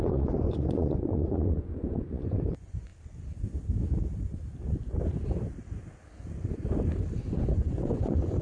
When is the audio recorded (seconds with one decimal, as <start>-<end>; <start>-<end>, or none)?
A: 2.9-7.2